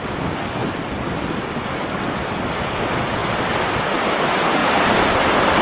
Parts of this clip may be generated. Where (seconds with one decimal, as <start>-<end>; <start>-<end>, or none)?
0.6-2.3

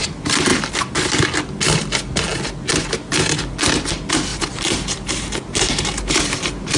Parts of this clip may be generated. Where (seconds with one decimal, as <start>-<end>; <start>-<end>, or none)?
4.3-6.8

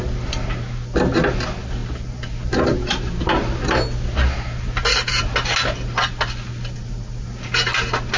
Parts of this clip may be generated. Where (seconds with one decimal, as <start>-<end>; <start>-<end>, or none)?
none